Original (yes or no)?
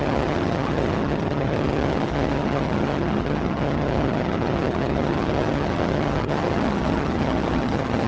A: no